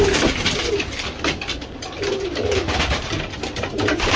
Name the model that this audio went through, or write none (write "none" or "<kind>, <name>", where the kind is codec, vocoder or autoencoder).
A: none